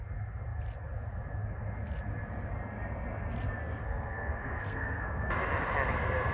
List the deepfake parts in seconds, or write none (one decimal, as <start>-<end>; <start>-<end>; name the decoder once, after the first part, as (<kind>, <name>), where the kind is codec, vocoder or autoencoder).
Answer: 3.8-5.2 (codec, SNAC)